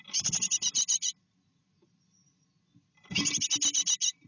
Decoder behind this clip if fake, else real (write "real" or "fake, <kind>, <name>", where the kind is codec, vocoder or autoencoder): real